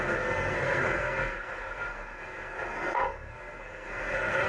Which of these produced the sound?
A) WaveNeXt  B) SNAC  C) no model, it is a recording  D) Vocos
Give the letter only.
B